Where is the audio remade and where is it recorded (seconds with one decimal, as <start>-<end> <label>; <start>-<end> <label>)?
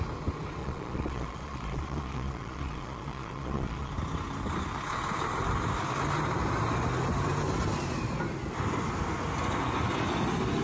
0.0-0.6 recorded; 0.6-3.9 remade; 3.9-10.6 recorded